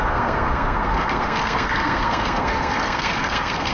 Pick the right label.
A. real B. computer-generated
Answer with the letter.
B